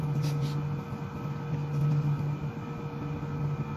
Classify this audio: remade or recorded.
recorded